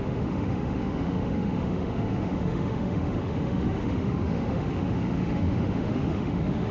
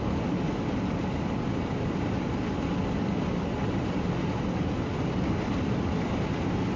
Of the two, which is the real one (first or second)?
second